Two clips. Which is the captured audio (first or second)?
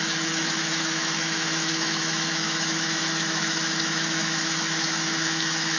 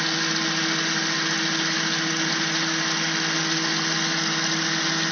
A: second